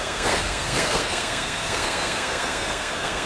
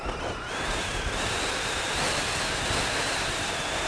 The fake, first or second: first